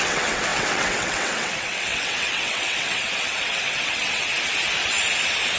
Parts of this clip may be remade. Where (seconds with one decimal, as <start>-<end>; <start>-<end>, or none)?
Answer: 0.0-4.3